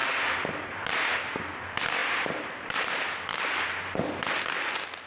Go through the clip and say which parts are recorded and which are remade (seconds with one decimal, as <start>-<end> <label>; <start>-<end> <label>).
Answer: 0.0-1.1 remade; 1.1-2.0 recorded; 2.0-5.1 remade